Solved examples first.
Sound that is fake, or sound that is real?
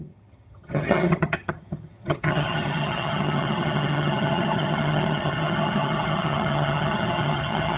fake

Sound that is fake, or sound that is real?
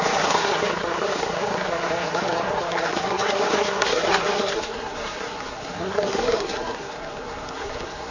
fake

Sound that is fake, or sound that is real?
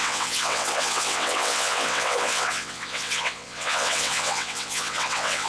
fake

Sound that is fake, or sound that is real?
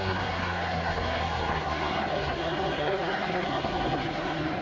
fake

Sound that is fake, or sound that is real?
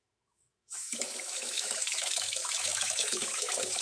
fake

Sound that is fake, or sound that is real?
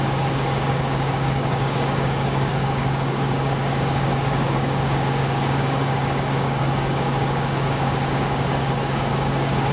fake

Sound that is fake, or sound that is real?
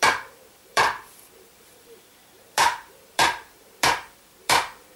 fake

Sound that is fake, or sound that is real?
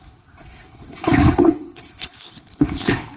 fake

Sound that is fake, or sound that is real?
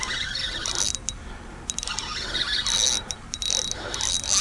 real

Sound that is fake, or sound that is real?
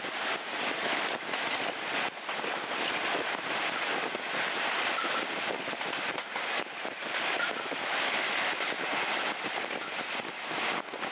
real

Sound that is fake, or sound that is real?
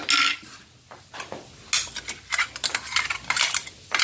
real